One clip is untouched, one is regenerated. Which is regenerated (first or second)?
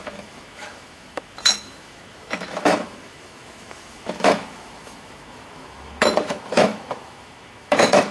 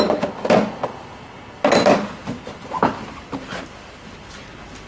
first